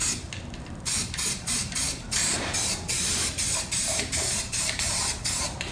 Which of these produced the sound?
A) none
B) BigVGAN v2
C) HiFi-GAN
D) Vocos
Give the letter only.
B